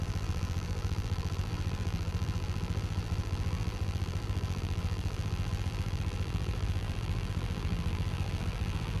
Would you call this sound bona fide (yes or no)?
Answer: no